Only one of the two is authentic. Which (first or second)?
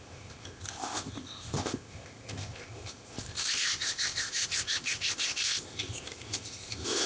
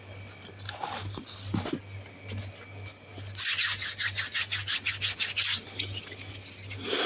second